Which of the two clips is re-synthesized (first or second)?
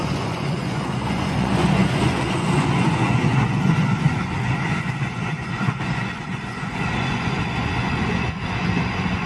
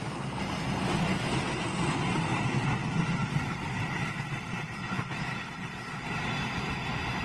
first